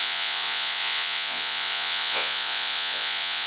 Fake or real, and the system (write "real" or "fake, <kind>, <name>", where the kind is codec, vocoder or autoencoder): fake, vocoder, Vocos